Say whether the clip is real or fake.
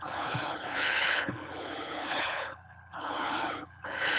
fake